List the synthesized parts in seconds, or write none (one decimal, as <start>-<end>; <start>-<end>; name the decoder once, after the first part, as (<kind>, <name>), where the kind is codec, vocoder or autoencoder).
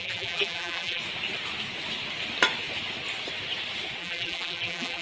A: 0.0-1.0 (vocoder, BigVGAN v2); 4.0-5.0